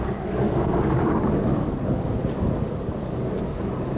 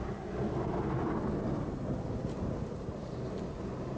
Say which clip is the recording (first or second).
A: second